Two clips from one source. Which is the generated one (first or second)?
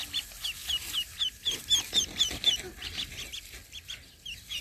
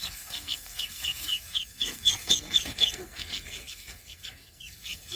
second